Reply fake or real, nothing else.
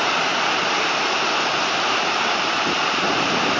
fake